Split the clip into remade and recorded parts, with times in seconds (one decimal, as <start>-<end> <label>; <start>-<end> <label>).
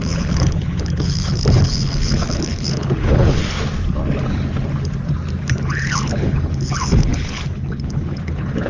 0.0-3.4 remade; 3.4-5.4 recorded; 5.4-8.7 remade